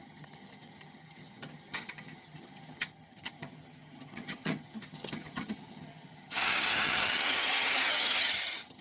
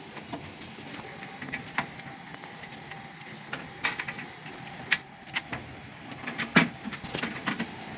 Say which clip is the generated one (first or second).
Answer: first